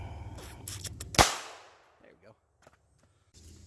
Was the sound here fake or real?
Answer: real